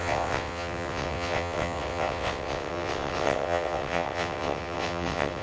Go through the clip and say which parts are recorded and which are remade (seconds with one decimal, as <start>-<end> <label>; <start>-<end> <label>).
0.0-5.4 remade